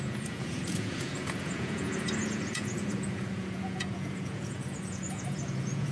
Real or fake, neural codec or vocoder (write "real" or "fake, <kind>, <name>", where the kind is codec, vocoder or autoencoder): fake, vocoder, Vocos